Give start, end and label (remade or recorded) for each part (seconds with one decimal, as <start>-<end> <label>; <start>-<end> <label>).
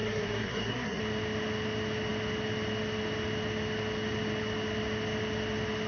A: 0.0-1.0 remade; 1.0-5.9 recorded